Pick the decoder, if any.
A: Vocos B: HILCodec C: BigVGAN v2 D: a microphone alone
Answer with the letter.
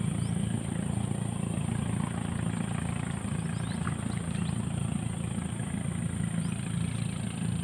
D